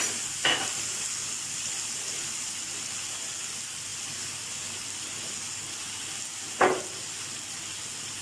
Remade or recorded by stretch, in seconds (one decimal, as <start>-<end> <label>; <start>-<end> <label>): 0.0-8.2 recorded